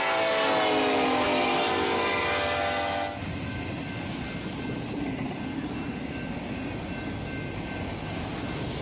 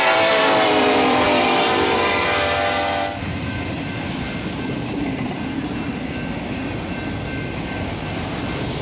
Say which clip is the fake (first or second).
second